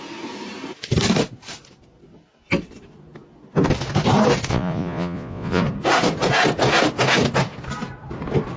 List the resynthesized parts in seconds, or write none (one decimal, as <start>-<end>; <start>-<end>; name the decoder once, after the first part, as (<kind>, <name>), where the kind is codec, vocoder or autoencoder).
4.5-5.6 (vocoder, Vocos)